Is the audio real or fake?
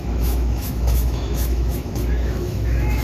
fake